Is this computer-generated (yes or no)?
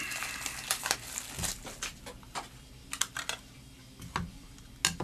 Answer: no